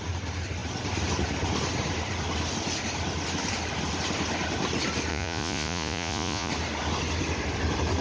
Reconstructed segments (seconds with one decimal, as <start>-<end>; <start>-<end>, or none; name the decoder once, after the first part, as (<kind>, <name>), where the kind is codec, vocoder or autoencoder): 5.1-6.5 (vocoder, Vocos)

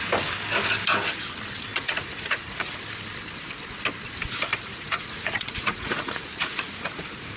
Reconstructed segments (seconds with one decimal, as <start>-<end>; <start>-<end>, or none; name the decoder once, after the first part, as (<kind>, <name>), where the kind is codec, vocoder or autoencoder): 1.7-2.8 (vocoder, Vocos); 4.7-7.4

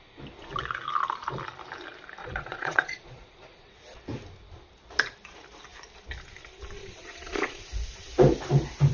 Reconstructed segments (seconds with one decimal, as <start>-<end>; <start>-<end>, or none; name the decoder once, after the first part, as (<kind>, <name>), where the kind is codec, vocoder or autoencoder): 2.2-3.7 (vocoder, Vocos); 6.8-7.6

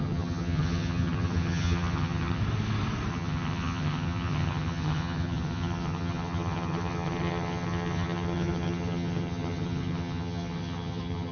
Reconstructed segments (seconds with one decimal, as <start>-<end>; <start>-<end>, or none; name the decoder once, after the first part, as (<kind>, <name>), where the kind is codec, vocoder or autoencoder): 0.0-2.4 (vocoder, HiFi-GAN); 3.1-11.3

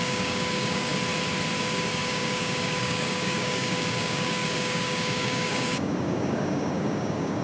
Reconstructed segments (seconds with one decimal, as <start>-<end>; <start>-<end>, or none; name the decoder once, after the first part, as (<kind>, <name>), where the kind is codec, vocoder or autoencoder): 0.0-0.9 (codec, DAC); 1.6-7.4

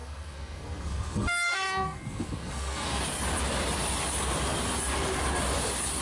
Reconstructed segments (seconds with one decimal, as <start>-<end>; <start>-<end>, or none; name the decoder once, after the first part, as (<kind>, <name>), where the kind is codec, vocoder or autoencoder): 0.0-3.0 (codec, SNAC)

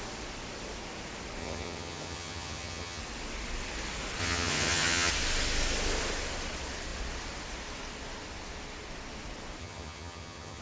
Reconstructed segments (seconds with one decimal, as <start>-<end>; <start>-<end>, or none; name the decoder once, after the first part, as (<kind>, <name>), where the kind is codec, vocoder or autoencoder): 1.4-3.0 (vocoder, HiFi-GAN); 4.2-5.1; 9.6-10.6

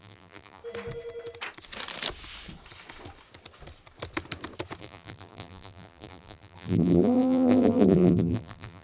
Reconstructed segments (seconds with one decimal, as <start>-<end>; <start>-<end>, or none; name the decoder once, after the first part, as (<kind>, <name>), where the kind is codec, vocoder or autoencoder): 0.0-0.6 (vocoder, BigVGAN v2); 4.8-8.8